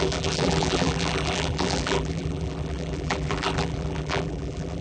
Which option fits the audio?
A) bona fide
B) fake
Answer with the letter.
B